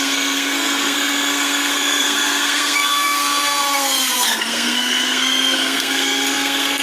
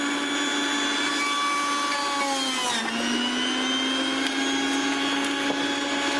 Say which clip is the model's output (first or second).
first